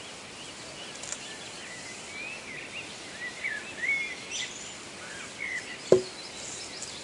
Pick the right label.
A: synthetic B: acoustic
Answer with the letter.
B